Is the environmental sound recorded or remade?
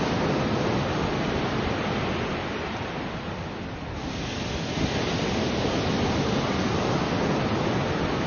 recorded